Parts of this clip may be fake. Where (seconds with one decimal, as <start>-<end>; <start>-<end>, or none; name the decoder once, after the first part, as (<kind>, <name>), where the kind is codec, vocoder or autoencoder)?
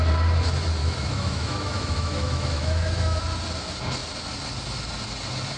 0.8-3.2 (autoencoder, DAC-VAE)